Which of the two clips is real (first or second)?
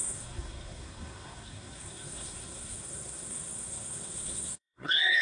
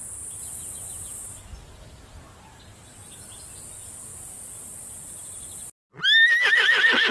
second